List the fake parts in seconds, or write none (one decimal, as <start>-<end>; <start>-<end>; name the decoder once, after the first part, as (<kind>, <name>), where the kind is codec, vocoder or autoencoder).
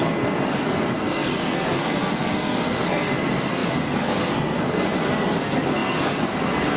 0.0-6.8 (codec, SNAC)